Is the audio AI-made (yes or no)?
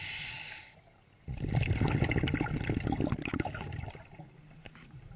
no